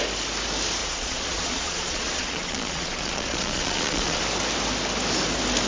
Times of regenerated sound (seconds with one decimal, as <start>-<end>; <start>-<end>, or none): 0.8-4.2